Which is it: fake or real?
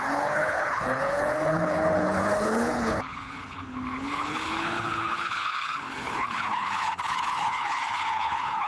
fake